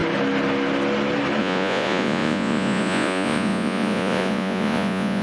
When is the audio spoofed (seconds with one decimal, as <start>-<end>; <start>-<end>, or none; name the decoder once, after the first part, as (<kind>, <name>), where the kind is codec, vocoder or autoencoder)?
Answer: 1.4-5.2 (vocoder, Vocos)